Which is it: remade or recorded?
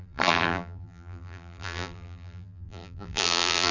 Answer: remade